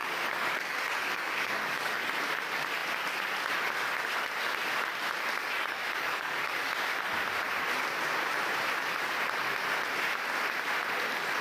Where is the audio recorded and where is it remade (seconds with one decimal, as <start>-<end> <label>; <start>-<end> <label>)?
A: 0.0-2.1 remade; 2.1-5.4 recorded; 5.4-6.7 remade; 6.7-11.4 recorded